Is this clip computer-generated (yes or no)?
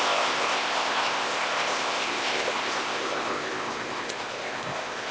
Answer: yes